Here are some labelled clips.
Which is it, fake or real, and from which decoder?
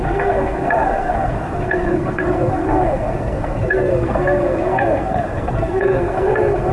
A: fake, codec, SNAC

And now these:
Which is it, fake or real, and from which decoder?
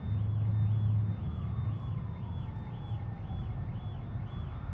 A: real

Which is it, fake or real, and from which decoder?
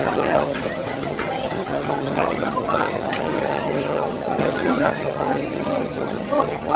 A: fake, vocoder, HiFi-GAN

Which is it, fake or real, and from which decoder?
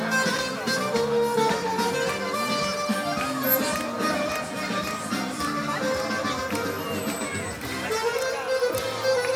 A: real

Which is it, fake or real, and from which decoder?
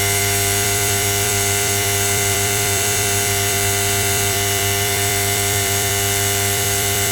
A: fake, vocoder, BigVGAN v2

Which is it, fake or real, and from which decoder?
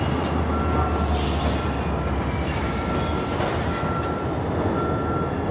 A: real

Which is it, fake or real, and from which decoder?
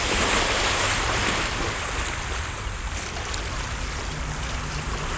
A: real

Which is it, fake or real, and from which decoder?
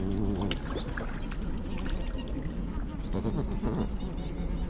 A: real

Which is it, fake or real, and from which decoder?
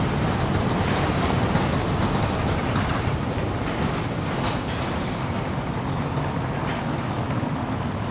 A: real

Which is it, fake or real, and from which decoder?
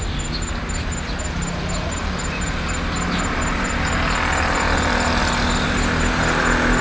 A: real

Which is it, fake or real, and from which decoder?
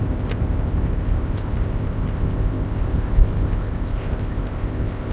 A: fake, codec, ZipCodec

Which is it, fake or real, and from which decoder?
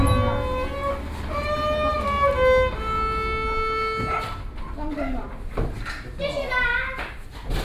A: real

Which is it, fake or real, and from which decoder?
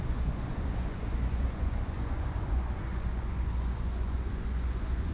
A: fake, vocoder, Vocos